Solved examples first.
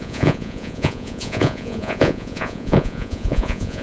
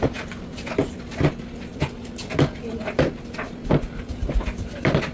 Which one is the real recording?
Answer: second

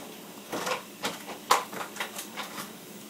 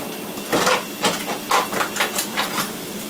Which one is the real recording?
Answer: second